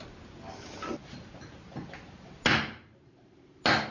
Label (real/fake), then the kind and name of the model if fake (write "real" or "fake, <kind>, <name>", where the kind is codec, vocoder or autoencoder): real